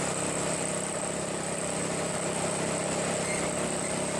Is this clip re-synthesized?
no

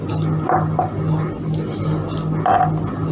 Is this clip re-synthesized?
no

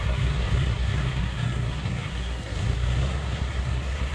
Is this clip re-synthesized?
yes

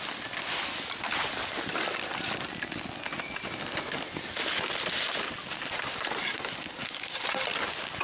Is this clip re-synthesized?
no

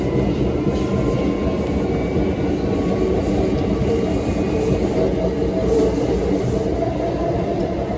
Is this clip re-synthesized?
no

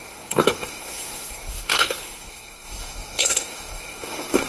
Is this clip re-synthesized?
yes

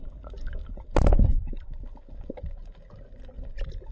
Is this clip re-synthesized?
no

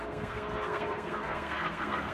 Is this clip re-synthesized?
yes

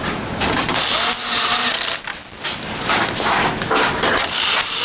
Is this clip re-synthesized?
no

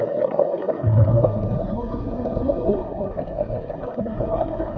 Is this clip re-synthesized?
yes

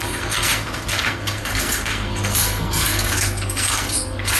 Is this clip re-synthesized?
yes